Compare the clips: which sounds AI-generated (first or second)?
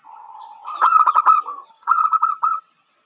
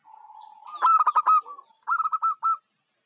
first